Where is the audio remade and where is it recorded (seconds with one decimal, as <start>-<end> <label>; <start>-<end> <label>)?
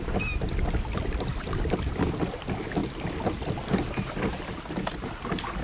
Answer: 0.0-1.3 recorded; 1.3-2.4 remade; 2.4-2.8 recorded; 2.8-3.3 remade; 3.3-5.6 recorded